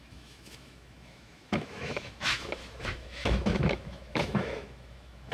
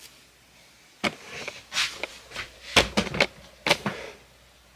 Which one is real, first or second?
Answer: second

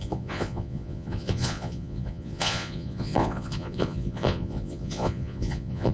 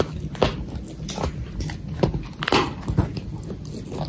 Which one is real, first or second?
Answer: second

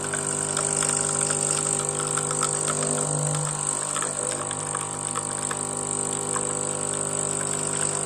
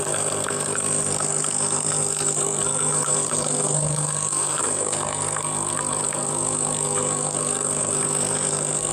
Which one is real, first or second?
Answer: first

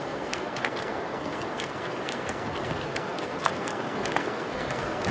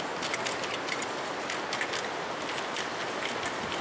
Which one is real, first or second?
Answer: second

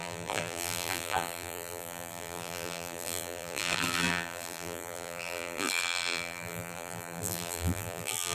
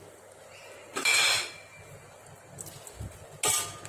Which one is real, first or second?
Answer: second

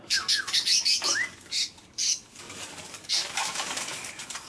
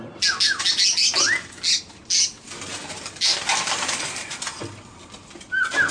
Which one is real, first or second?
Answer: second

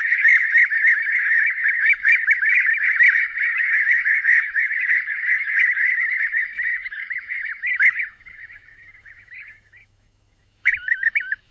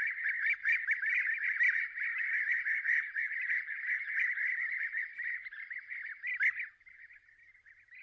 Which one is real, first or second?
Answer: second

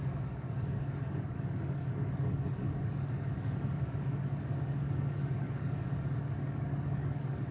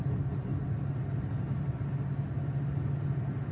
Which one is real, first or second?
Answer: second